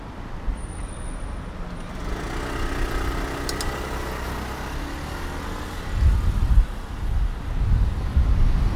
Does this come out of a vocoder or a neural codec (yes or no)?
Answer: no